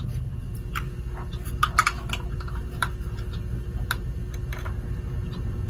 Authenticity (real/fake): real